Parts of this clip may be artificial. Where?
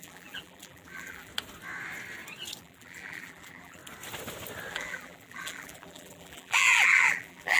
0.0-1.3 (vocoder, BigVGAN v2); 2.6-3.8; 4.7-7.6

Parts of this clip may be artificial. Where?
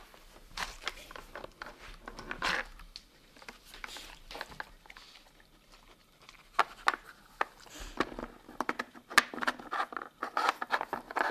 none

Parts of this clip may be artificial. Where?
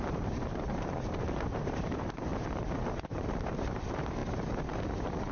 0.0-2.3 (vocoder, BigVGAN v2); 2.8-5.3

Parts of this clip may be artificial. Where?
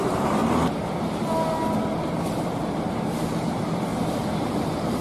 0.0-0.4 (vocoder, BigVGAN v2); 2.2-3.9; 4.4-5.0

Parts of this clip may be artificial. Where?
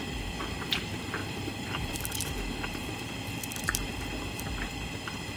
1.2-1.9 (vocoder, BigVGAN v2)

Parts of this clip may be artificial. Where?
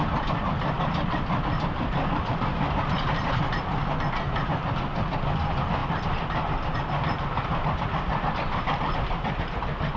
none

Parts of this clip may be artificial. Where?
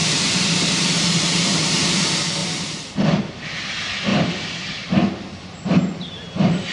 0.0-2.0 (vocoder, BigVGAN v2); 2.4-3.2; 4.1-6.7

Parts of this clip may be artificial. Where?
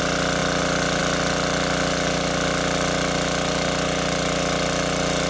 none